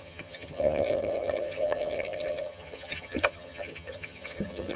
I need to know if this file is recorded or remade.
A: remade